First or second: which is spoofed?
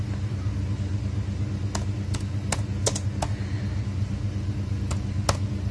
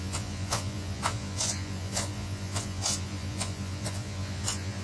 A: second